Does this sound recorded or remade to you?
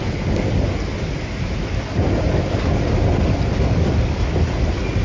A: recorded